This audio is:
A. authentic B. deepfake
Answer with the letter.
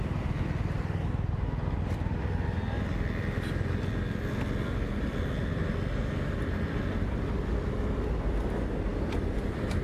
A